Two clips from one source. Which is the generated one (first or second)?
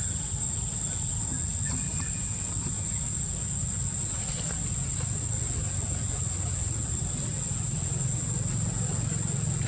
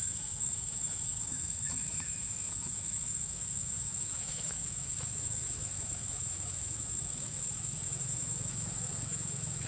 second